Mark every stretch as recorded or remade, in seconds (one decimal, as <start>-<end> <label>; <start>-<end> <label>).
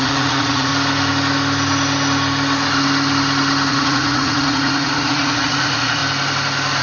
0.0-0.7 remade; 0.7-3.7 recorded; 3.7-6.0 remade; 6.0-6.8 recorded